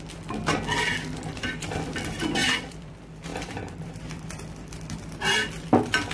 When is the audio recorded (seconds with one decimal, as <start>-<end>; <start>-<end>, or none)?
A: 0.0-2.4; 2.9-3.3; 5.2-6.1